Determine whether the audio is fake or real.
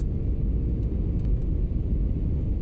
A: real